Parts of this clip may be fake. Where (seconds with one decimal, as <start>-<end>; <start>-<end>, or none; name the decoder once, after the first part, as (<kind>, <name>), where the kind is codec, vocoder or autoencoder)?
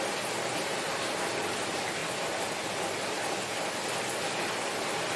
none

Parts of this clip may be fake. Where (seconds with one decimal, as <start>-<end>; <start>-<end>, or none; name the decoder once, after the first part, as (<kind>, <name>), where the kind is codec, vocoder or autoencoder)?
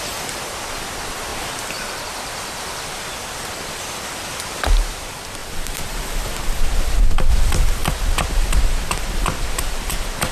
none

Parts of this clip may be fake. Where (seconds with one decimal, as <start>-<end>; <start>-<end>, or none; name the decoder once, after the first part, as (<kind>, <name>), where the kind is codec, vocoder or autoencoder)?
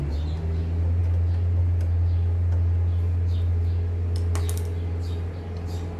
none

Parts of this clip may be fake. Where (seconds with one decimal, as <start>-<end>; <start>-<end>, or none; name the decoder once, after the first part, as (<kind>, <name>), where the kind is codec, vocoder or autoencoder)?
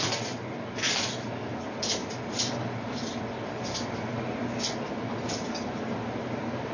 none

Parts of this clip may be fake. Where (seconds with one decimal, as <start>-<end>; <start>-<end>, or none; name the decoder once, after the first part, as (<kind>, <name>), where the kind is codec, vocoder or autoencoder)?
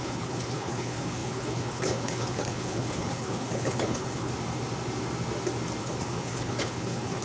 0.0-4.3 (codec, HILCodec); 5.8-7.2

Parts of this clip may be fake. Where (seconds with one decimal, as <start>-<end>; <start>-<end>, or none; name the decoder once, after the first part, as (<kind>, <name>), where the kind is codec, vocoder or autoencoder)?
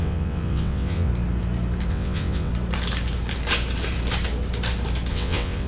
0.0-1.1 (vocoder, WaveNeXt); 1.9-2.5; 5.1-5.7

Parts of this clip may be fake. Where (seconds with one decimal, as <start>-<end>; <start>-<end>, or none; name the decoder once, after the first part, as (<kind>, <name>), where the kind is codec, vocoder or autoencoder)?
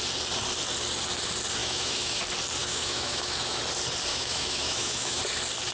1.6-2.2 (autoencoder, DAC-VAE); 2.6-3.6; 4.1-5.2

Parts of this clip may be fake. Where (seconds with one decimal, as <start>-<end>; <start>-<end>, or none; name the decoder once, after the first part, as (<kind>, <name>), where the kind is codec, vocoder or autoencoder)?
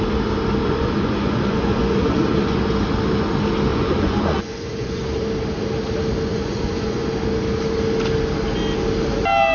0.6-2.6 (vocoder, Vocos); 3.7-5.0; 6.3-7.1